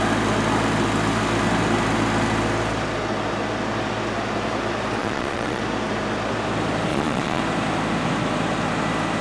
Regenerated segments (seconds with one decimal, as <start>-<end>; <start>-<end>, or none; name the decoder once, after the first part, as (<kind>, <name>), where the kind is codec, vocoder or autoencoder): 5.0-5.6 (vocoder, Vocos); 6.9-7.4

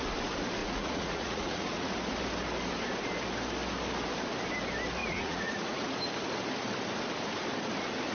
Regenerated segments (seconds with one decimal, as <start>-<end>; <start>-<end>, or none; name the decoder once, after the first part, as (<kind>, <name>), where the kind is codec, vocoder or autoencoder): 0.6-1.9 (vocoder, Vocos); 5.0-6.0

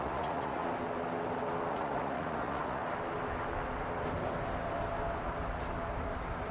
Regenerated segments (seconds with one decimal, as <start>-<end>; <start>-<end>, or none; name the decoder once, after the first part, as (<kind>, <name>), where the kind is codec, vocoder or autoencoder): 0.0-0.6 (vocoder, Vocos); 1.7-2.8

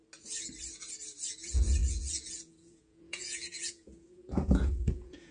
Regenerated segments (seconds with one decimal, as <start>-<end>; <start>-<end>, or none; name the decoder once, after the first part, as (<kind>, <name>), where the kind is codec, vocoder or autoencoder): 1.3-5.3 (vocoder, Vocos)

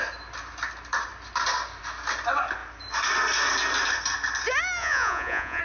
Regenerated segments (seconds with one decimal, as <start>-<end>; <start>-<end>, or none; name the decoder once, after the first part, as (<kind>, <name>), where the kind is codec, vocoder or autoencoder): 4.8-5.6 (vocoder, Vocos)

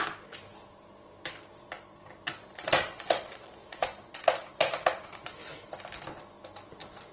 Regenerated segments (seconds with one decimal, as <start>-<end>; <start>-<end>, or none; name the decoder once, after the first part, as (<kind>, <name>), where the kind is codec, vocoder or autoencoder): 2.4-5.3 (vocoder, Vocos)

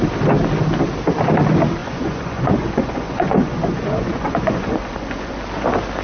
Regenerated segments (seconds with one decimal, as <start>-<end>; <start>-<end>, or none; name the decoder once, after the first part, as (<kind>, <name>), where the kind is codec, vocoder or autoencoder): 1.8-5.4 (vocoder, Vocos)

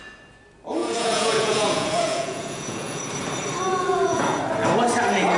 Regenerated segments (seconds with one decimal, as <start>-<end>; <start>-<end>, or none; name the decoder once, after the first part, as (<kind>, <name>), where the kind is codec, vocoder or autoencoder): 0.8-3.0 (vocoder, Vocos); 3.7-4.4